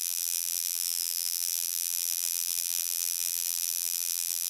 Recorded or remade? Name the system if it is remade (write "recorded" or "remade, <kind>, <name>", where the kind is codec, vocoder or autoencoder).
remade, vocoder, BigVGAN v2